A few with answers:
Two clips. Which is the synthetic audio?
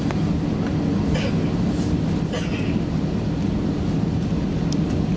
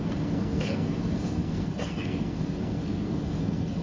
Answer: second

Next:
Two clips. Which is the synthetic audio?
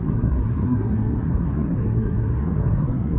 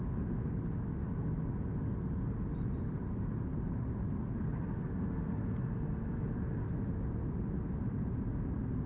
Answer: first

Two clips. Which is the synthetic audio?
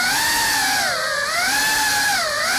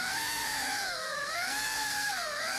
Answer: second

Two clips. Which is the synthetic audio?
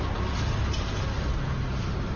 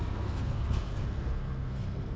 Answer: second